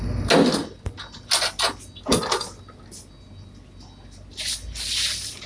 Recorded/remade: recorded